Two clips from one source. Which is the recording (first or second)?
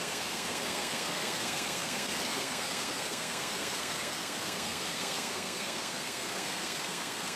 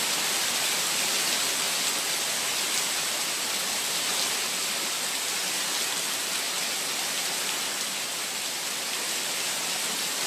second